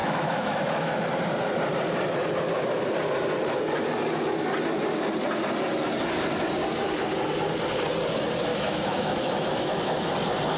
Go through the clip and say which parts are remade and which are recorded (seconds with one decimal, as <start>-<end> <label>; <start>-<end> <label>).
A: 0.0-1.0 remade; 1.0-8.5 recorded; 8.5-10.1 remade; 10.1-10.6 recorded

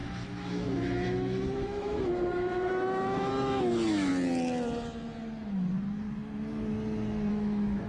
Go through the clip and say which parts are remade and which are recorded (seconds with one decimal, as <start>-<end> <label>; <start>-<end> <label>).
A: 0.0-4.1 remade; 4.1-7.3 recorded; 7.3-7.9 remade

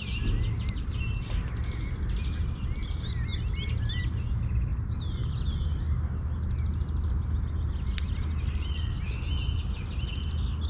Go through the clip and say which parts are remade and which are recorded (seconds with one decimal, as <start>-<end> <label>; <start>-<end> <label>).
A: 0.0-10.7 recorded

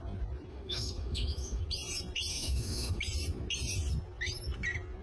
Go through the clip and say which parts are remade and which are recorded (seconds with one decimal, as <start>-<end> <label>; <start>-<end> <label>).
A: 0.0-0.5 recorded; 0.5-1.6 remade; 1.6-2.3 recorded; 2.3-3.0 remade; 3.0-5.0 recorded

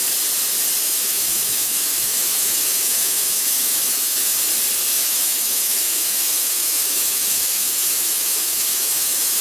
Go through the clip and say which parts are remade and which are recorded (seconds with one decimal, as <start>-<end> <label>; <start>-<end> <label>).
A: 0.0-0.8 recorded; 0.8-4.4 remade; 4.4-4.9 recorded; 4.9-9.4 remade